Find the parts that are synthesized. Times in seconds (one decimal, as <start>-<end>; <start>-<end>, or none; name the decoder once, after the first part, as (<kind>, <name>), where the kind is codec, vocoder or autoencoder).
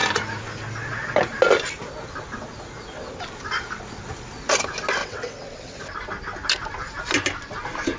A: 5.0-5.8 (vocoder, WaveNeXt)